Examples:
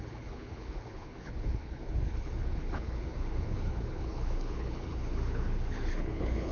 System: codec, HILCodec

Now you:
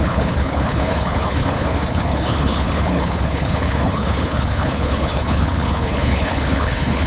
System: codec, HILCodec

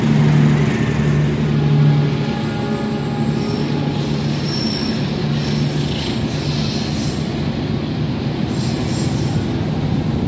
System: none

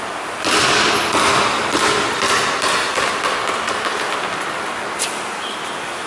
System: none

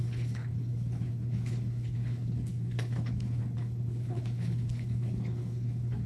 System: codec, HILCodec